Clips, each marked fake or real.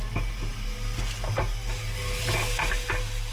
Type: real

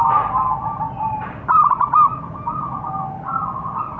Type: real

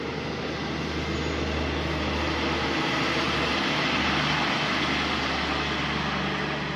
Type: real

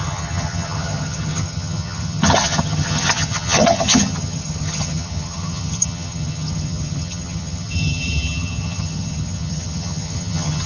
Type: fake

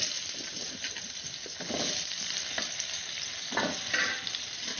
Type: real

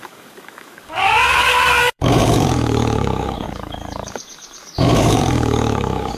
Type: fake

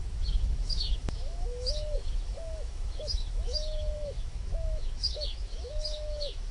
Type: fake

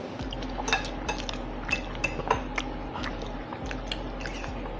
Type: real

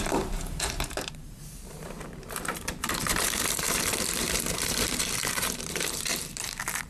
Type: fake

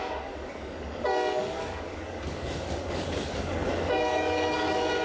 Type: fake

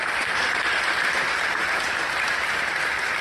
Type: fake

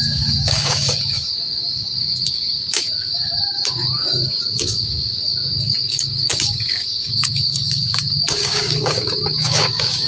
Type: fake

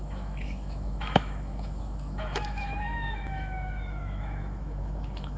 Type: fake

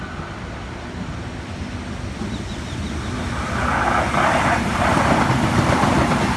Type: real